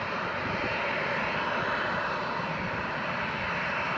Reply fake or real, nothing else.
real